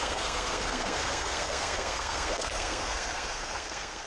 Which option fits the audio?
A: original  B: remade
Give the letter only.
B